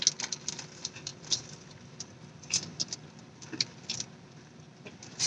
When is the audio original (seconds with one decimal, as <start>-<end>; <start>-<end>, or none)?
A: 0.0-5.3